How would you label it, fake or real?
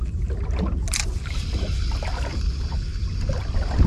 real